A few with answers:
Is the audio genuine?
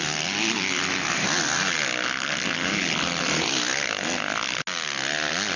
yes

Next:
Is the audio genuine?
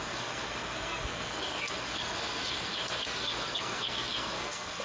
no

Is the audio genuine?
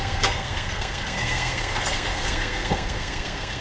no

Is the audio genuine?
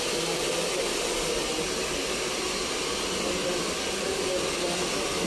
yes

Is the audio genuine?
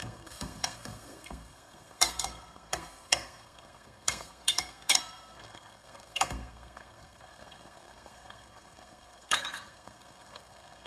no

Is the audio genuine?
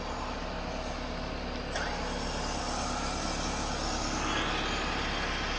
yes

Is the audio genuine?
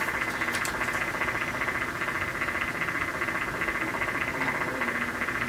yes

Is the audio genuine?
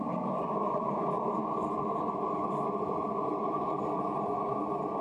yes